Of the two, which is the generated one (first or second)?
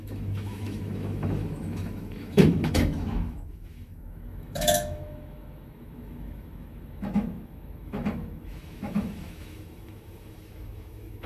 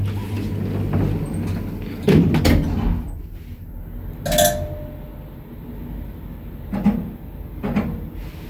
first